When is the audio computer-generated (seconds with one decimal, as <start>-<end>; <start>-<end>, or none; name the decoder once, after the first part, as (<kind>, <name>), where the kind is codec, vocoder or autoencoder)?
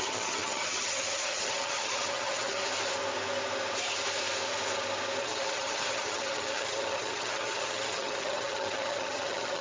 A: 0.0-2.6 (vocoder, HiFi-GAN); 5.2-9.6